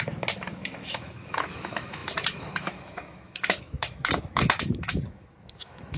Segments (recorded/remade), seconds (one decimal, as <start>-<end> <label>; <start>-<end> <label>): 0.0-6.0 remade